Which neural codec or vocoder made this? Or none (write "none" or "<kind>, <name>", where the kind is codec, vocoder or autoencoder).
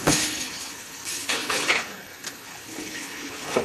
codec, HILCodec